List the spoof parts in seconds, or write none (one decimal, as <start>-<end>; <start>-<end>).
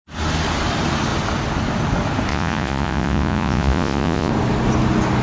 2.3-4.3